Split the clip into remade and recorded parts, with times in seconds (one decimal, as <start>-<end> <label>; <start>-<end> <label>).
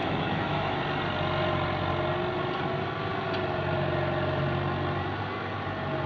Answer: 0.0-0.8 remade; 0.8-6.1 recorded